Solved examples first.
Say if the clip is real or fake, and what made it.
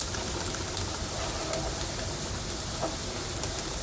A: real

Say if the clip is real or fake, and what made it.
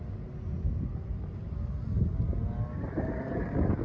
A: real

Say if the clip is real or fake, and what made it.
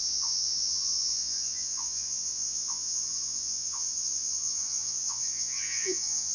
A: fake, vocoder, Vocos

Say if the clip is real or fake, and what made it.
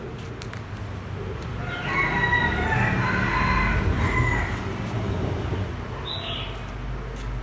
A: real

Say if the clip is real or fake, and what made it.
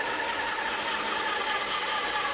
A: real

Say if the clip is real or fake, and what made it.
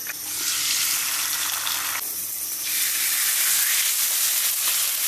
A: real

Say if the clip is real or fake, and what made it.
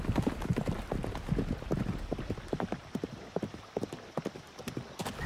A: real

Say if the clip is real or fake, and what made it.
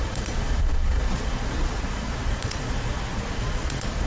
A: fake, vocoder, Vocos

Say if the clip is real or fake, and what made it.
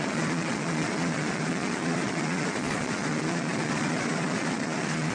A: fake, vocoder, Vocos